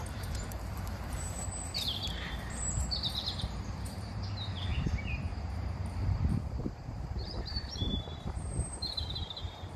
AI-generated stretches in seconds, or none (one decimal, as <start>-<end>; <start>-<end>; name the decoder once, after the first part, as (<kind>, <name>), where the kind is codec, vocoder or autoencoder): 0.0-9.8 (vocoder, BigVGAN v2)